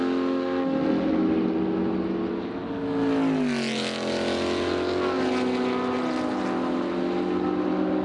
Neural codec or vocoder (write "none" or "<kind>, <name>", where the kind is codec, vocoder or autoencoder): none